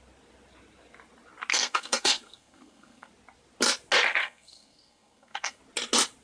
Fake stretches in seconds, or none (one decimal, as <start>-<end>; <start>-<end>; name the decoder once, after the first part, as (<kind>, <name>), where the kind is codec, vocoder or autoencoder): 1.5-3.1 (codec, SNAC); 4.2-5.6